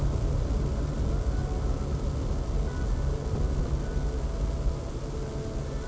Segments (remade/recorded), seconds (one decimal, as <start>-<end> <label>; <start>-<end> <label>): 0.0-5.9 recorded